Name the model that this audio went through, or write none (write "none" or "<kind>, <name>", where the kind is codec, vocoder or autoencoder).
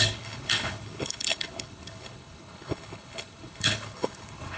codec, HILCodec